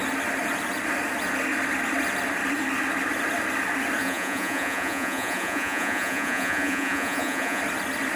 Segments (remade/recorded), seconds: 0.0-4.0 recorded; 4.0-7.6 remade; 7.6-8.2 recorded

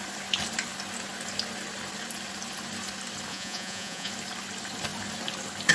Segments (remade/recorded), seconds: 0.0-3.3 recorded; 3.3-4.1 remade; 4.1-5.7 recorded

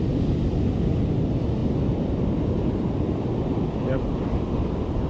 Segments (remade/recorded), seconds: 0.0-5.1 recorded

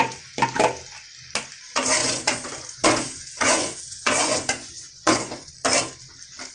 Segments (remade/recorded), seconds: 0.0-2.0 recorded; 2.0-5.5 remade; 5.5-6.5 recorded

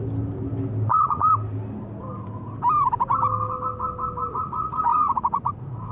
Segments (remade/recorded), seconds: 0.0-0.9 recorded; 0.9-1.3 remade; 1.3-4.3 recorded; 4.3-5.9 remade

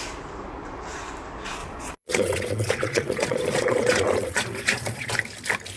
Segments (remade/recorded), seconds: 0.0-1.6 recorded; 1.6-5.1 remade; 5.1-5.8 recorded

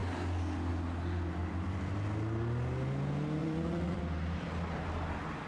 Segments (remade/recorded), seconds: 0.0-3.4 recorded; 3.4-4.0 remade; 4.0-5.5 recorded